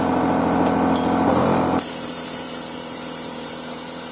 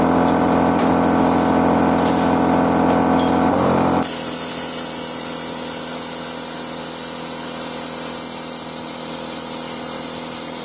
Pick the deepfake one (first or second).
first